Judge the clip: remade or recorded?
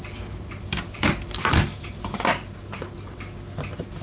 recorded